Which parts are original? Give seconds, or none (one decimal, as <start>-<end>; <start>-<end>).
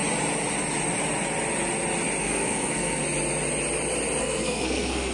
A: 0.0-2.2; 3.0-4.2